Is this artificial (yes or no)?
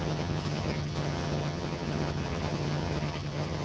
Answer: yes